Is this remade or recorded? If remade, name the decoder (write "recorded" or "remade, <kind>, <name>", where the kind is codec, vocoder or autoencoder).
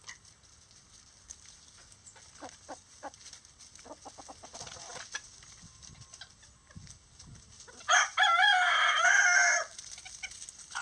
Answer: recorded